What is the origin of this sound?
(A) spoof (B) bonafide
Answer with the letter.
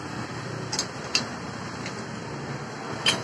B